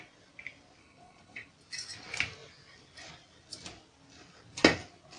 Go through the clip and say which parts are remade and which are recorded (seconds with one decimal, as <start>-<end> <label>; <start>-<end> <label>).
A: 0.0-0.8 recorded; 0.8-1.5 remade; 1.5-5.2 recorded